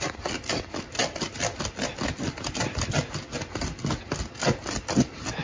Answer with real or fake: real